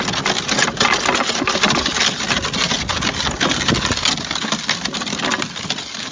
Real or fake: real